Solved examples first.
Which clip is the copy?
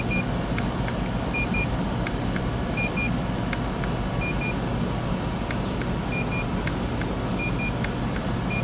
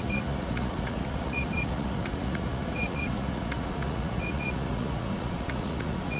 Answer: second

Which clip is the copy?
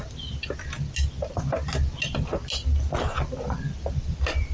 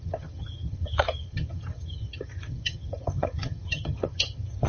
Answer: second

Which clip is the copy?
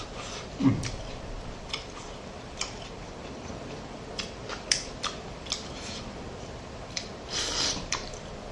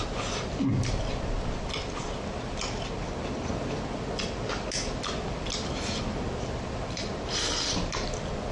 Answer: first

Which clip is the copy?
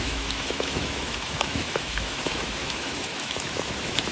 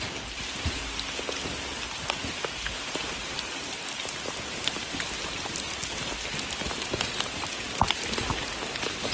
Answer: first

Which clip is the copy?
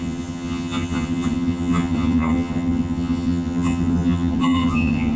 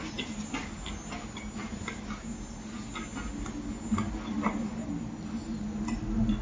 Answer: first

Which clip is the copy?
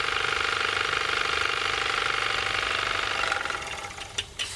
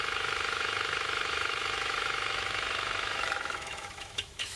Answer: second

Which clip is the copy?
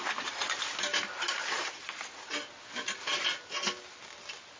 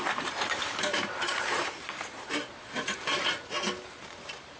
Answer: second